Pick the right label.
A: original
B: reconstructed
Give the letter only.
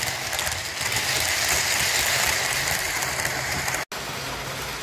A